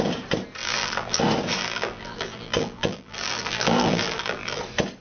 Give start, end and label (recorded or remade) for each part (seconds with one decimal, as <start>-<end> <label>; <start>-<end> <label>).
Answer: 0.0-0.6 recorded; 0.6-1.2 remade; 1.2-1.6 recorded; 1.6-4.6 remade; 4.6-5.0 recorded